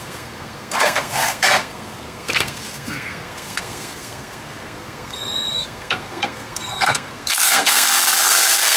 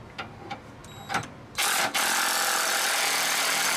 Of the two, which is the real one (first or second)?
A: second